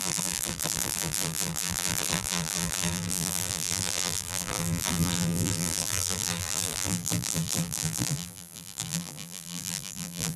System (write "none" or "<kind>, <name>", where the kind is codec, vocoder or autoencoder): vocoder, BigVGAN v2